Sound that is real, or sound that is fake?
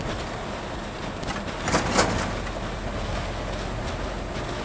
real